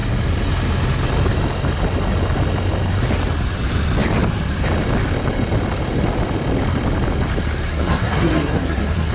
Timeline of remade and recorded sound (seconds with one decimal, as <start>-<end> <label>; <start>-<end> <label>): 0.0-7.7 recorded; 7.7-9.1 remade